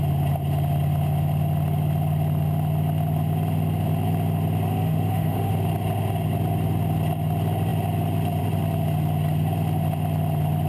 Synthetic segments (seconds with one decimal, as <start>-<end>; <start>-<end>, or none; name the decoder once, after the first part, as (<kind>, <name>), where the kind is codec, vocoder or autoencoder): 4.7-5.5 (autoencoder, DAC-VAE)

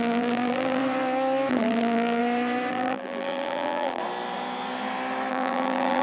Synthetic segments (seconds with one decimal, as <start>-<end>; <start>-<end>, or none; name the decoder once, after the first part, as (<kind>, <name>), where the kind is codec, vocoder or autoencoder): 0.0-0.8 (vocoder, BigVGAN v2); 1.5-2.2; 2.7-4.0; 5.3-6.0

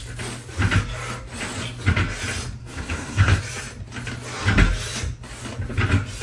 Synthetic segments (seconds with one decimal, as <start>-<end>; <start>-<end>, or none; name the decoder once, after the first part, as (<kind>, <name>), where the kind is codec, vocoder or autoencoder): 2.6-3.4 (codec, SNAC)

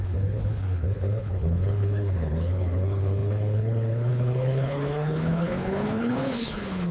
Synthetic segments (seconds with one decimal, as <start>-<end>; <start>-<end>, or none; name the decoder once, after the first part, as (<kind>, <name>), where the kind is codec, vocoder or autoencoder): 0.0-6.9 (codec, HILCodec)